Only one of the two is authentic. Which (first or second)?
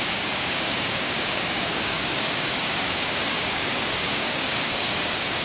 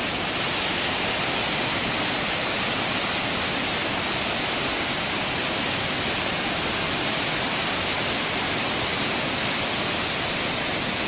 second